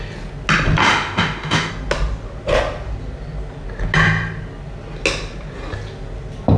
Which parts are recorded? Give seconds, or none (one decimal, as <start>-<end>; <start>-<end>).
0.0-0.8; 1.7-6.6

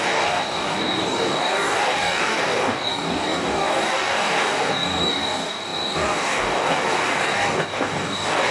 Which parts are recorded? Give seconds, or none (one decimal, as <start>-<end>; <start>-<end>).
none